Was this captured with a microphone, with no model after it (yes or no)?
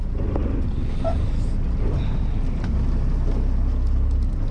yes